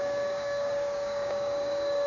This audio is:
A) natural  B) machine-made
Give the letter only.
B